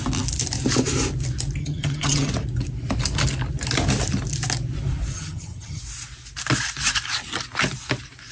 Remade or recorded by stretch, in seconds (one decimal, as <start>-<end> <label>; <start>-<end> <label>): 0.0-1.6 recorded; 1.6-2.3 remade; 2.3-5.1 recorded; 5.1-5.8 remade; 5.8-8.3 recorded